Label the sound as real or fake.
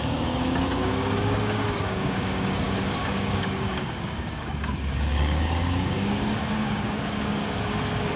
fake